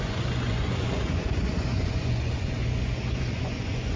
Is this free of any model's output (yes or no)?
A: no